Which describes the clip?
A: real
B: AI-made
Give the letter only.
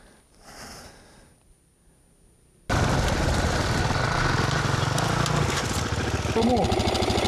A